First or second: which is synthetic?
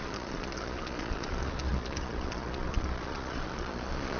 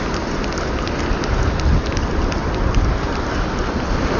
first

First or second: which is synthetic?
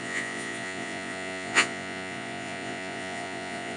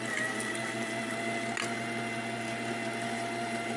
first